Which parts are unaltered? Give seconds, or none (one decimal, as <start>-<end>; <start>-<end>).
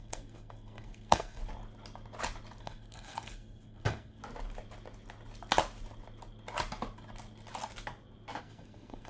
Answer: 1.4-2.6; 4.2-8.4